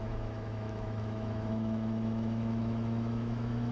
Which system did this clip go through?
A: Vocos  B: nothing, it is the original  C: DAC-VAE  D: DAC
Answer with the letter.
C